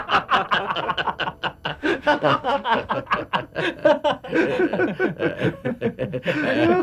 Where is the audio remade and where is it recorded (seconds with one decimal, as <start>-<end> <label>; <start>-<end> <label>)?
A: 0.0-1.7 recorded; 1.7-2.9 remade; 2.9-6.8 recorded